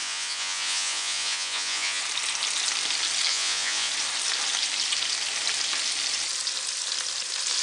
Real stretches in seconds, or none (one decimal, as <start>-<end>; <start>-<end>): 2.0-3.3; 3.9-7.6